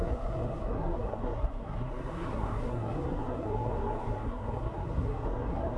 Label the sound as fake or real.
fake